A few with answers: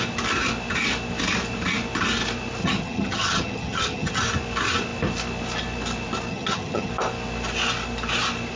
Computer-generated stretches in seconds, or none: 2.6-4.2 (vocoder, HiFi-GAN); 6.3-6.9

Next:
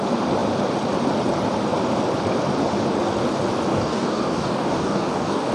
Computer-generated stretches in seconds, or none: 3.7-5.5 (codec, DAC)

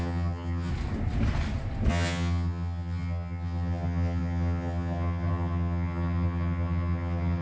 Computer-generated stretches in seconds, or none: 0.0-0.7 (vocoder, HiFi-GAN); 1.9-7.4

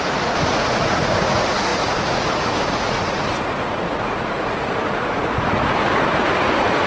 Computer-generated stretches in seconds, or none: 0.0-6.9 (vocoder, Vocos)